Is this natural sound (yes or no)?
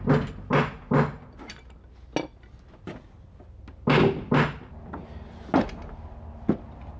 yes